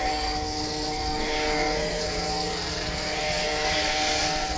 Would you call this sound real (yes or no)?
no